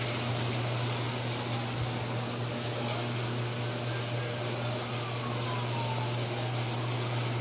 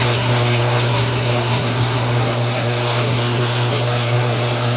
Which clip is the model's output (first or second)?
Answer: second